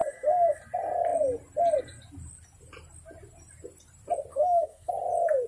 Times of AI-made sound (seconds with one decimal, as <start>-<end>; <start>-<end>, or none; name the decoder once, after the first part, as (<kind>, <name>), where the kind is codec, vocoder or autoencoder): 0.0-0.6 (codec, SNAC); 4.3-4.9